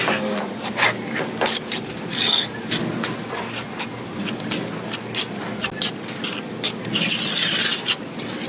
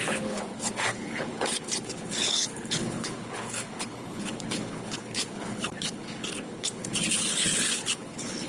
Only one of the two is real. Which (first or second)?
first